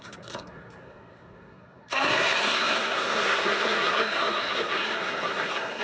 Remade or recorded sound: remade